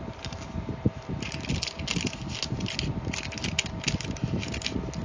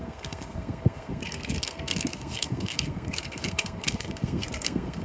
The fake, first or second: second